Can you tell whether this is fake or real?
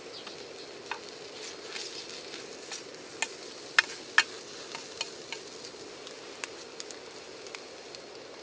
real